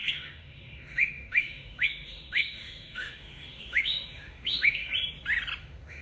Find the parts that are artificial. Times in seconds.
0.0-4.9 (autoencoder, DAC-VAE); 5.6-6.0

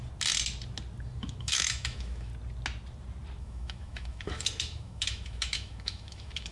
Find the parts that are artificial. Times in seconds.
1.4-2.3 (autoencoder, DAC-VAE); 3.4-6.5

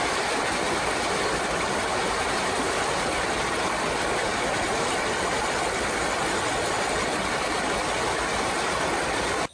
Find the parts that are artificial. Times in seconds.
1.9-2.8 (vocoder, BigVGAN v2)

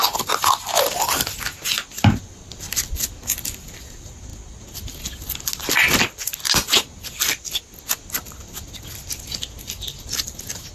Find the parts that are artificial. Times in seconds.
none

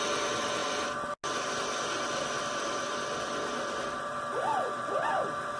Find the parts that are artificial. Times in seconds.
none